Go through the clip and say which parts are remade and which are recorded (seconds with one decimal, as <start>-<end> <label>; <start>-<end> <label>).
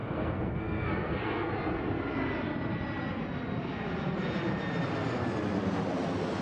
0.0-1.5 remade; 1.5-6.4 recorded